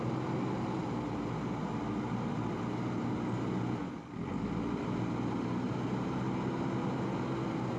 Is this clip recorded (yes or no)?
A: yes